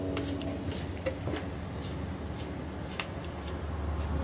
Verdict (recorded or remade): recorded